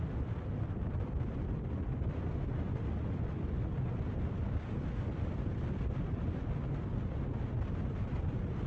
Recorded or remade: recorded